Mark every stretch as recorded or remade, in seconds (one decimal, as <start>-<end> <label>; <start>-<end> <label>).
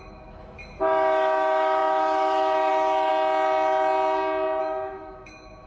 0.0-3.1 remade; 3.1-4.6 recorded; 4.6-5.7 remade